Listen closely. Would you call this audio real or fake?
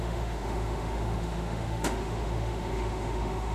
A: fake